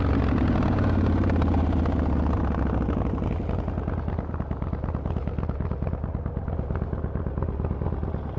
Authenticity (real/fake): real